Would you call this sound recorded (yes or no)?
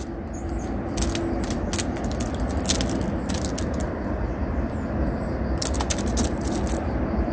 yes